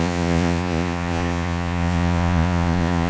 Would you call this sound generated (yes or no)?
yes